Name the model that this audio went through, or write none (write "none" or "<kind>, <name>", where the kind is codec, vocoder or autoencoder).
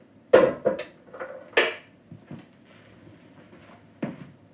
none